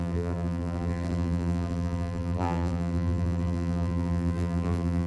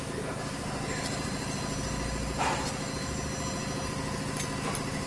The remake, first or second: first